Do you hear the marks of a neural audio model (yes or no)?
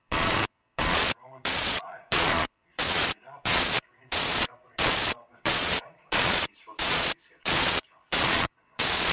yes